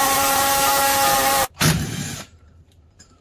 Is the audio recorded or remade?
remade